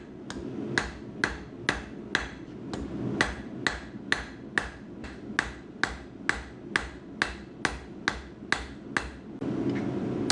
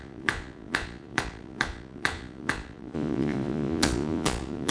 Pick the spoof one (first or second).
second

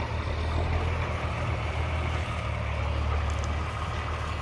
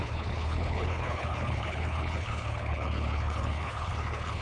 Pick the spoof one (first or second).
second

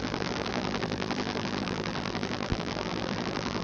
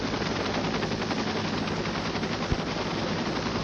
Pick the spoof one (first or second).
first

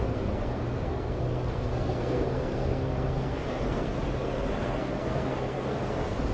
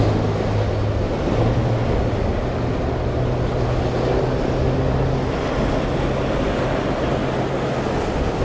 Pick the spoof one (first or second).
first